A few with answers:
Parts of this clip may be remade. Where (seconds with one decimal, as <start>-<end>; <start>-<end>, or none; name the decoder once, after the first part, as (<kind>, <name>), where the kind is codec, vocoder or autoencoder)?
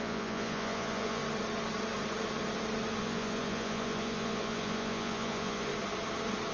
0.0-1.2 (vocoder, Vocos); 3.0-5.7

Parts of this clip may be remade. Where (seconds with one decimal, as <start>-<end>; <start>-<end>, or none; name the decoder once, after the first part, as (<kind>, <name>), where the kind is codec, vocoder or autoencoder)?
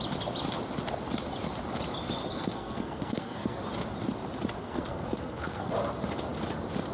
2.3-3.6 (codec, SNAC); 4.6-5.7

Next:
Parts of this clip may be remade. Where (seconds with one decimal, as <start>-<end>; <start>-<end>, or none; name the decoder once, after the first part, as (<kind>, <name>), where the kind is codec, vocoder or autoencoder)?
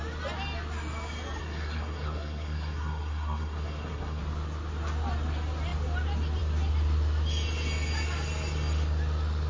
1.4-4.2 (codec, SNAC)